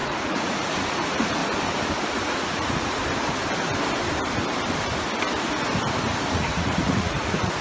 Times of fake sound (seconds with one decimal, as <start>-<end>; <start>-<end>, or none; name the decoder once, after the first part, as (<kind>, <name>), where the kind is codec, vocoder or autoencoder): 0.0-1.4 (vocoder, Vocos); 2.1-3.0; 6.3-7.6